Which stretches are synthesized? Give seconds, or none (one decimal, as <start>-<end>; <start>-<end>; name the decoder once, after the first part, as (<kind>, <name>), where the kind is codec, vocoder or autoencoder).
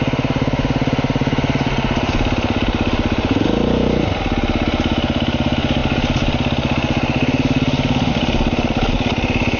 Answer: none